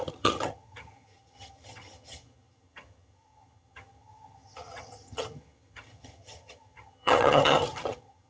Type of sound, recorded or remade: remade